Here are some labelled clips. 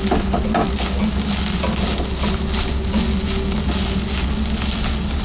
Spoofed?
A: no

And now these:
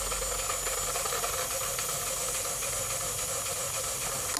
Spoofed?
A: no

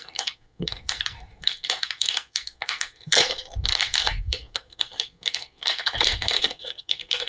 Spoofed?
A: yes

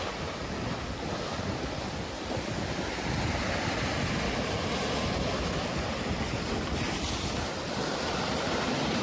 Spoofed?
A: no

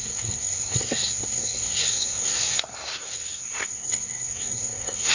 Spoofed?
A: yes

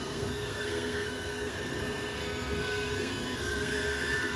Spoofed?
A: yes